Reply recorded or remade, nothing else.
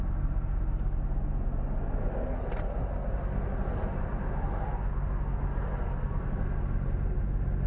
recorded